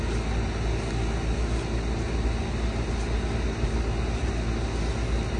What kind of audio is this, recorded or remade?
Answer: recorded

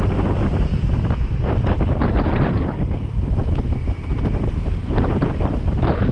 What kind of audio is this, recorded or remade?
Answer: recorded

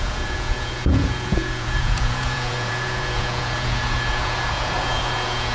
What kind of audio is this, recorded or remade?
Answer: remade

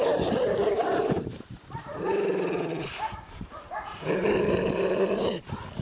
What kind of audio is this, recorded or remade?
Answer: remade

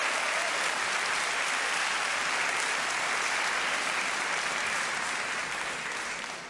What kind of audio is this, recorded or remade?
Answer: recorded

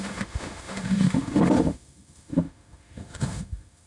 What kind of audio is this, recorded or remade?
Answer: remade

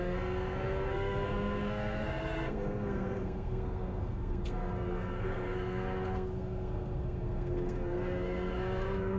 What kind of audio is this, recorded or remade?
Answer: remade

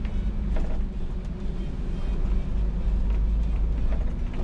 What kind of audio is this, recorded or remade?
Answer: recorded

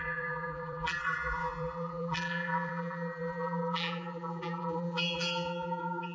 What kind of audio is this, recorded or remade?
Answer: remade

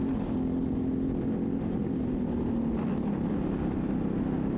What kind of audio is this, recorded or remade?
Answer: recorded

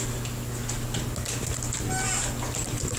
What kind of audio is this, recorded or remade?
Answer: recorded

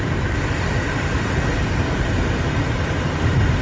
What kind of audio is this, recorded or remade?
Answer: recorded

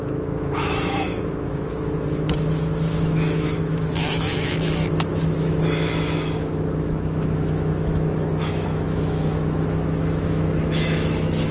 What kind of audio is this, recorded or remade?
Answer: remade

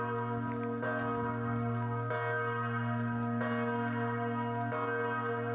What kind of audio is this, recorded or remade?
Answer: recorded